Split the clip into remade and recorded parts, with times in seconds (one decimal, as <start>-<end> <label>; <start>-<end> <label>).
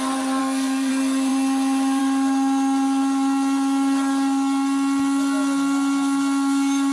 0.0-0.4 recorded; 0.4-0.9 remade; 0.9-6.9 recorded